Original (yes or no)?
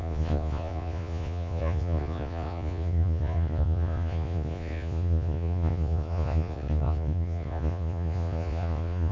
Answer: no